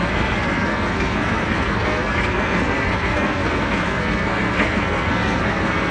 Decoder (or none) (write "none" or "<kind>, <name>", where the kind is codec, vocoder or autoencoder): codec, SNAC